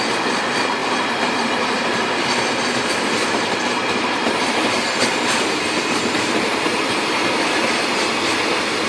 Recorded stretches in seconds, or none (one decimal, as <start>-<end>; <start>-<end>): 0.0-0.8; 1.5-3.2; 7.2-8.9

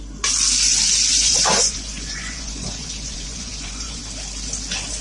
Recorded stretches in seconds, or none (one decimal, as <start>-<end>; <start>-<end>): 0.0-1.1; 4.0-5.0

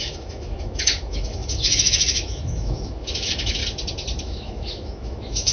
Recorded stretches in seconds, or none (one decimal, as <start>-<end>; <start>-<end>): 3.6-4.2

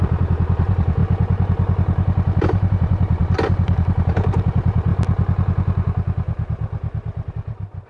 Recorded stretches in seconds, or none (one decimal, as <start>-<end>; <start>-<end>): 1.0-2.4; 4.9-7.3

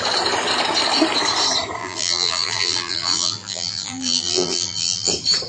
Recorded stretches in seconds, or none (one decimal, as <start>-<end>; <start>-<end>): 0.0-1.8; 5.1-5.5

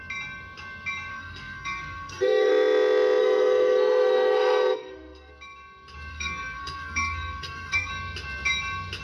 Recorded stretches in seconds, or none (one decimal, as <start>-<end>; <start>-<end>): 0.0-1.1; 2.5-3.2; 5.3-6.1; 7.9-9.0

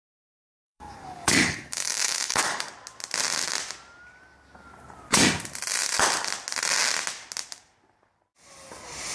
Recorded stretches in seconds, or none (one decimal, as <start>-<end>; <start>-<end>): 2.7-9.1

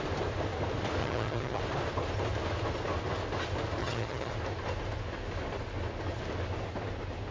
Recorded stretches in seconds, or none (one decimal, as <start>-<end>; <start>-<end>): 0.0-1.0; 1.6-3.8; 4.3-7.3